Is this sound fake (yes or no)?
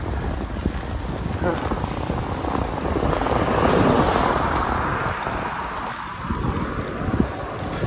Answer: no